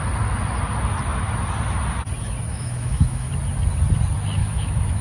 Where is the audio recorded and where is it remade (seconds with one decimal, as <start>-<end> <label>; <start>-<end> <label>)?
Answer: 0.0-2.5 recorded; 2.5-3.3 remade; 3.3-4.4 recorded; 4.4-5.0 remade